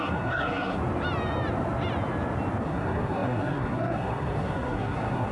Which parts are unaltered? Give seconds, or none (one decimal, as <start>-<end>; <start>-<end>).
0.8-2.6